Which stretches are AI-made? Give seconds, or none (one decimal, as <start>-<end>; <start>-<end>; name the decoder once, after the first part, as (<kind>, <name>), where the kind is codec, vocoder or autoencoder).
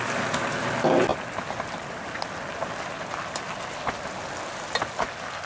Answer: none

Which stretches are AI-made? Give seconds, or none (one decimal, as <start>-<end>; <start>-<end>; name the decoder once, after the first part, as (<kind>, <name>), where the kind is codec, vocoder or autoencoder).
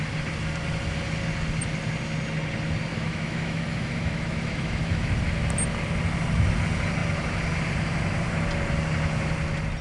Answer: 2.9-5.1 (autoencoder, DAC-VAE)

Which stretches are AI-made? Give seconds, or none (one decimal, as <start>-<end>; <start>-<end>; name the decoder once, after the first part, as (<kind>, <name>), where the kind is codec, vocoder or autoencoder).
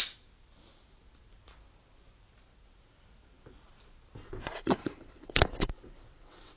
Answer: 4.2-6.6 (vocoder, WaveNeXt)